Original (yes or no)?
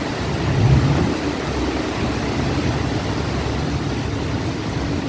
yes